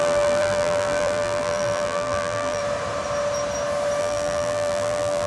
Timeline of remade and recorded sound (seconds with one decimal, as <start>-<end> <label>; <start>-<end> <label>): 0.0-2.6 remade; 2.6-4.0 recorded; 4.0-5.3 remade